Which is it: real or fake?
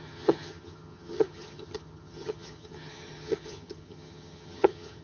fake